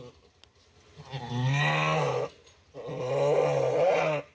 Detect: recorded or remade recorded